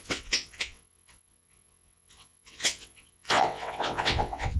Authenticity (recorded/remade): remade